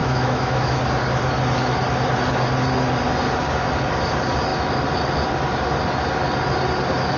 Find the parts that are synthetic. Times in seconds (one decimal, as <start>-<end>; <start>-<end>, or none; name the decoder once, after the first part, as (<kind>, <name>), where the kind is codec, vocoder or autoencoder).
0.0-0.8 (autoencoder, DAC-VAE)

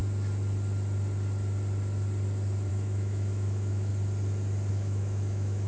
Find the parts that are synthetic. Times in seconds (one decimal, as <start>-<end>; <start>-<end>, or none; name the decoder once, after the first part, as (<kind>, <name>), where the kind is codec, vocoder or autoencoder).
2.7-3.9 (autoencoder, DAC-VAE); 4.7-5.7

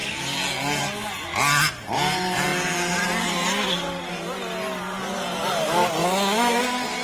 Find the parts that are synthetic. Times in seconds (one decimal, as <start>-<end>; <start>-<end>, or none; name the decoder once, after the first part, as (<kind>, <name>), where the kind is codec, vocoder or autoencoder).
6.0-6.6 (autoencoder, DAC-VAE)

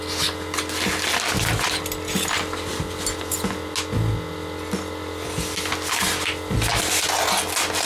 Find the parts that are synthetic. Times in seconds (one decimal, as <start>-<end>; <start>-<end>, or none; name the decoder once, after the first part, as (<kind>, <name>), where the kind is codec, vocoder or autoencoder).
none